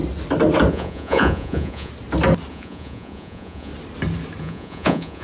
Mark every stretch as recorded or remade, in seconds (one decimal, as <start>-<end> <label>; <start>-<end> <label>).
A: 0.0-0.7 recorded; 0.7-1.9 remade; 1.9-2.5 recorded; 2.5-3.7 remade; 3.7-4.4 recorded; 4.4-5.2 remade